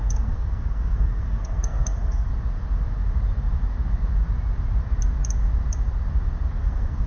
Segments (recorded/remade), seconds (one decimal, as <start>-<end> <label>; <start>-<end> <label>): 0.0-2.3 remade; 2.3-6.6 recorded; 6.6-7.1 remade